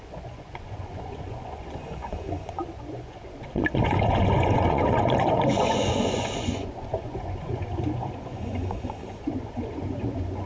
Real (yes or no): no